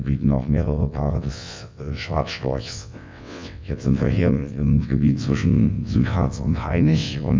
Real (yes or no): no